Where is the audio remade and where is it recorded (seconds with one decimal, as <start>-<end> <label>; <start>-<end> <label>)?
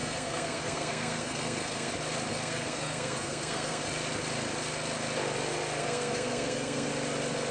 0.0-1.9 remade; 1.9-2.3 recorded; 2.3-3.8 remade; 3.8-5.8 recorded; 5.8-6.9 remade; 6.9-7.5 recorded